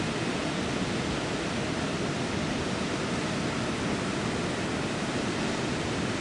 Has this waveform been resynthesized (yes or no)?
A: no